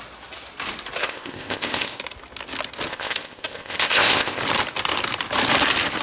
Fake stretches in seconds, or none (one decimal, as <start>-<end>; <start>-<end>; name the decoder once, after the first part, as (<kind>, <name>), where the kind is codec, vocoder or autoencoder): 1.0-2.0 (codec, ZipCodec); 2.9-4.4